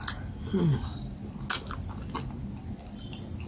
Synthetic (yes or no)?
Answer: no